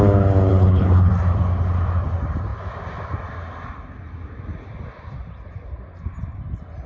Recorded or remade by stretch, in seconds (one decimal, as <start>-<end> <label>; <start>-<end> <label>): 0.0-0.5 recorded; 0.5-1.1 remade; 1.1-6.9 recorded